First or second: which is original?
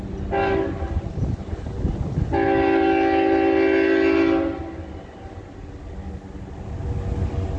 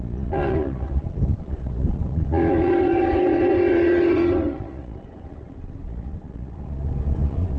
first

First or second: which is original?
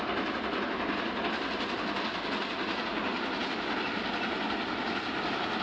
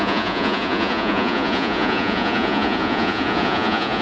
first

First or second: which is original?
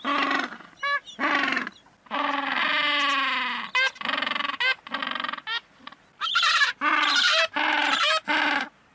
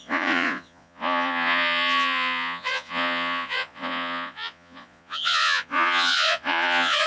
first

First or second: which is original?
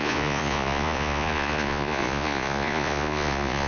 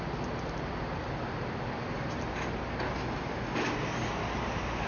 second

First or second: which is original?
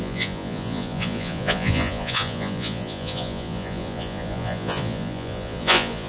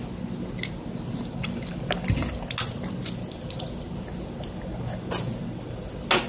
second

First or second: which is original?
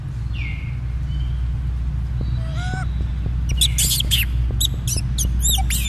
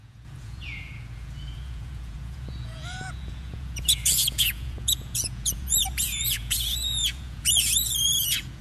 first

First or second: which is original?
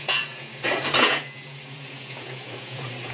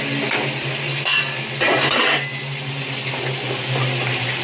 second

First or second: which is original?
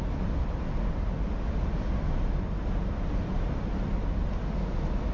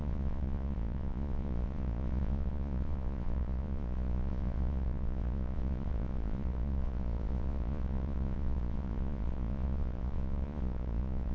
first